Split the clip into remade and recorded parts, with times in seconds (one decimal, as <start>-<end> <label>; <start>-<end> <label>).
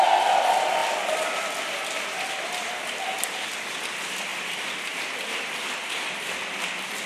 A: 0.0-4.3 recorded; 4.3-5.1 remade; 5.1-7.1 recorded